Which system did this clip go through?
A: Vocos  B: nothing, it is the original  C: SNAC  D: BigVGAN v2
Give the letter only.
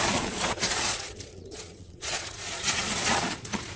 A